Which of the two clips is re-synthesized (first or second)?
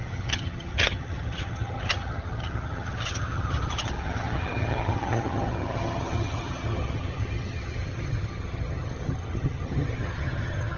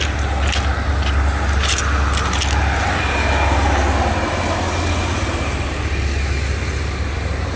first